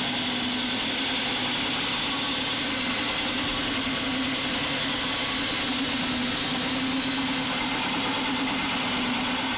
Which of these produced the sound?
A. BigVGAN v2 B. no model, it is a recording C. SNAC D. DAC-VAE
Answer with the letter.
B